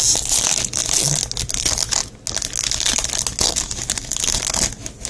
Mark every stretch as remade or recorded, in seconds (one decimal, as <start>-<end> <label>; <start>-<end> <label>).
0.0-5.1 recorded